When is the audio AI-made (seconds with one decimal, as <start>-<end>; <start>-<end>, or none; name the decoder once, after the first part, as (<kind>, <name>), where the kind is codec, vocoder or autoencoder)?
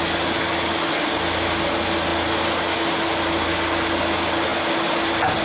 none